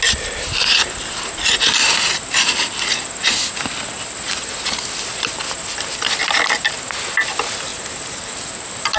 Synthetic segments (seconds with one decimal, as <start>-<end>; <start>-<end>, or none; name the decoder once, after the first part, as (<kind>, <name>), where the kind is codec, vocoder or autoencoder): 7.7-8.3 (vocoder, BigVGAN v2)